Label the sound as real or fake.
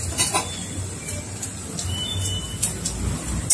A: real